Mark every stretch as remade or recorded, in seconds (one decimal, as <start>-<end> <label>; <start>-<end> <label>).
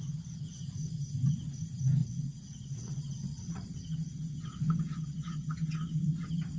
0.0-2.0 recorded; 2.0-6.0 remade; 6.0-6.6 recorded